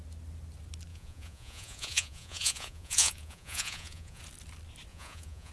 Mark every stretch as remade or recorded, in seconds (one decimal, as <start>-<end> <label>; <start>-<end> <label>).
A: 0.0-0.9 recorded; 0.9-4.2 remade; 4.2-4.9 recorded; 4.9-5.5 remade